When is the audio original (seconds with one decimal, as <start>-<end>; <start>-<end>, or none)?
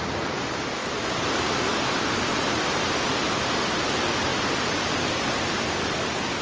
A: 0.0-6.4